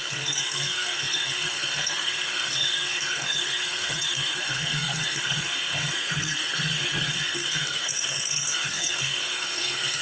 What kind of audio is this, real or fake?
fake